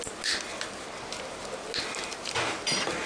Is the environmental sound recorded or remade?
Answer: recorded